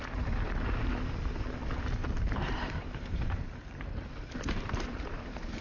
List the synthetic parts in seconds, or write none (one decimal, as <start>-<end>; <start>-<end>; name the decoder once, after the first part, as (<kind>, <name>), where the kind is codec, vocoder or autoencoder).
2.0-5.6 (vocoder, BigVGAN v2)